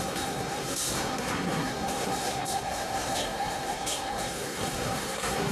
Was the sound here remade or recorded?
remade